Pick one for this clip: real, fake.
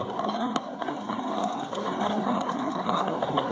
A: fake